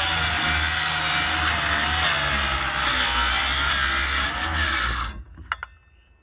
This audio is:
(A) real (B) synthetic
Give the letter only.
A